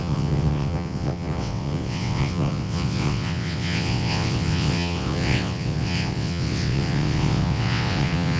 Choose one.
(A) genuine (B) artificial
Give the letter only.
B